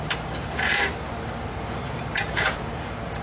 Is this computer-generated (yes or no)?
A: yes